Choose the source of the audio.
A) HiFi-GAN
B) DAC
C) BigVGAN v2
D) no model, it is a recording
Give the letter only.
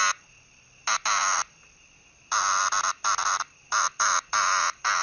D